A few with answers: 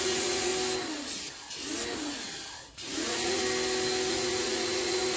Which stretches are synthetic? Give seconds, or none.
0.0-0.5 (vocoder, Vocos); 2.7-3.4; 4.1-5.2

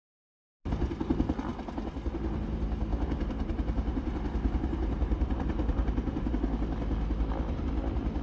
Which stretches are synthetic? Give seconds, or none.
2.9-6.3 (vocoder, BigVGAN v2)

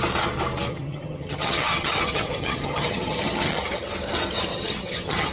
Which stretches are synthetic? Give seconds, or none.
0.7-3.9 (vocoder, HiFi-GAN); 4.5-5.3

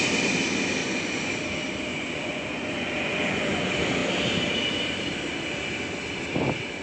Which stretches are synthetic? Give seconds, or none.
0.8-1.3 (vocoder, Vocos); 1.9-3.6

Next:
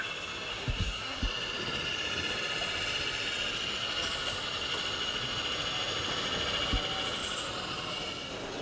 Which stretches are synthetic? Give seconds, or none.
0.5-1.2 (codec, SNAC)